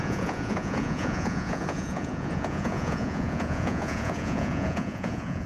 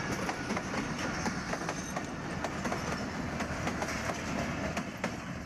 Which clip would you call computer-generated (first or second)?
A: first